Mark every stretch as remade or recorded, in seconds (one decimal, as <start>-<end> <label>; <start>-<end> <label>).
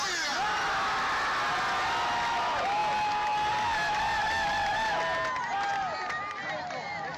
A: 0.0-4.2 recorded; 4.2-5.0 remade; 5.0-7.2 recorded